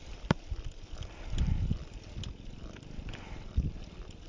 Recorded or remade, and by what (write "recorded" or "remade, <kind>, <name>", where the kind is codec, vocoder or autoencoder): recorded